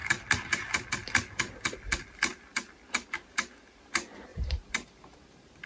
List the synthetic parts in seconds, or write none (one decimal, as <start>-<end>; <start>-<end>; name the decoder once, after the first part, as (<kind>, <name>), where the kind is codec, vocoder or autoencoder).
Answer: 4.3-5.7 (vocoder, BigVGAN v2)